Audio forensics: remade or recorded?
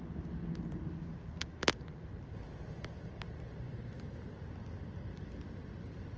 recorded